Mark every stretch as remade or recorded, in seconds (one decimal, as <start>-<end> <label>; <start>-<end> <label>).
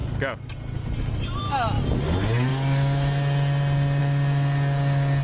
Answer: 0.0-5.2 recorded